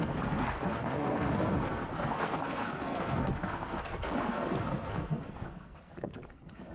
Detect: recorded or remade remade